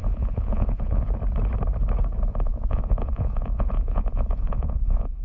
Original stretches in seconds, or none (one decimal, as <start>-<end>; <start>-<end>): 1.2-2.3